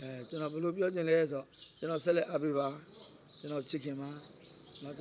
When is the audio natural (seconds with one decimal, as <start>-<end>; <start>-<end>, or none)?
3.0-5.0